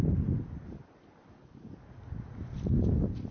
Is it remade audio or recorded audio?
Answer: recorded